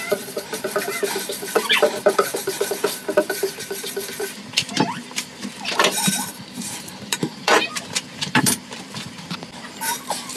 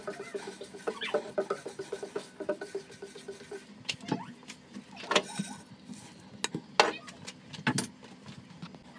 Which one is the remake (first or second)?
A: first